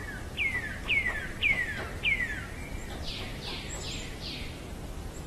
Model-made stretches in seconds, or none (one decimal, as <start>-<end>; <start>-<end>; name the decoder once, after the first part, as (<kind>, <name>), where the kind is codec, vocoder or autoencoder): 0.0-3.8 (vocoder, BigVGAN v2); 4.7-5.3